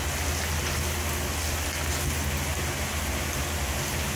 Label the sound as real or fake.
real